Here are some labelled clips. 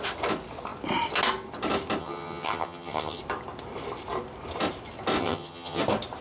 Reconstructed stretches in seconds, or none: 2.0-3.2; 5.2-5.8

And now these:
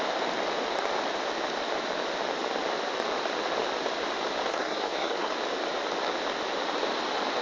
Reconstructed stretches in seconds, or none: 4.5-5.3